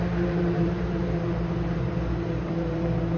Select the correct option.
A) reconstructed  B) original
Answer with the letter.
A